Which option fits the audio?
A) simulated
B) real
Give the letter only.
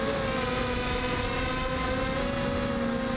B